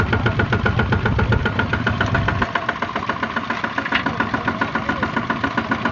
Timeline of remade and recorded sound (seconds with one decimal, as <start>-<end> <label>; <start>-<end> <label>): 0.0-5.9 recorded